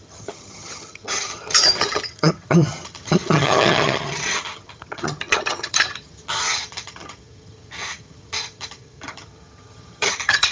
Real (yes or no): no